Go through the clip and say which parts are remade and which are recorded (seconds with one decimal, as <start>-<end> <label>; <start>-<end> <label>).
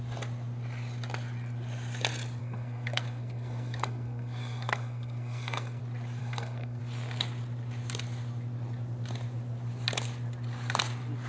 0.0-2.4 recorded; 2.4-5.8 remade; 5.8-6.2 recorded; 6.2-6.8 remade; 6.8-11.3 recorded